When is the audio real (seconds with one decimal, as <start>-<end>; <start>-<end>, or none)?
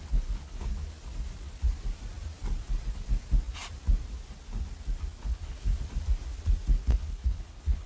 0.7-5.2; 5.7-6.8